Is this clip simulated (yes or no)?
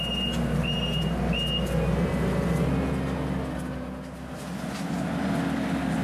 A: no